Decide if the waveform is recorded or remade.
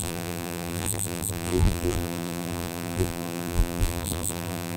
remade